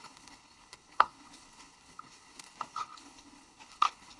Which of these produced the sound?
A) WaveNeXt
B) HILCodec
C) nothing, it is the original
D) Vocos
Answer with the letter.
B